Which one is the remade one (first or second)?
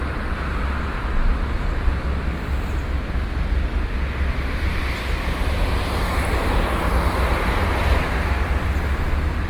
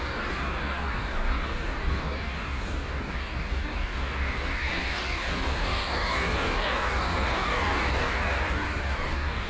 second